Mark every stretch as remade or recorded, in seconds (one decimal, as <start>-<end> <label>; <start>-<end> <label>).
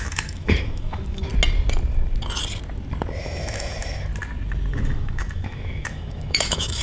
0.0-1.3 remade; 1.3-3.2 recorded; 3.2-4.1 remade; 4.1-4.7 recorded; 4.7-6.8 remade